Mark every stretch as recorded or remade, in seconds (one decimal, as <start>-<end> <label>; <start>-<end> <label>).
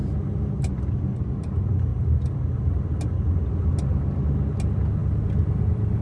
0.0-0.9 remade; 0.9-5.0 recorded; 5.0-6.0 remade